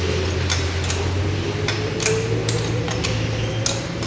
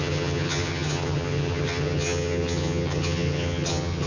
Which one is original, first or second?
first